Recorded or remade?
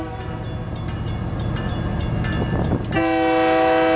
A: recorded